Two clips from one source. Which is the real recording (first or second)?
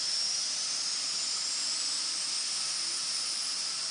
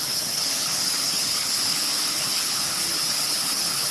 first